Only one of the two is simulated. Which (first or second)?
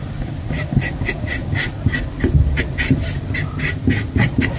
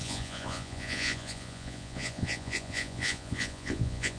second